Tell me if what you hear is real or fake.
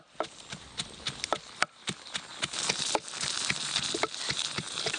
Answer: real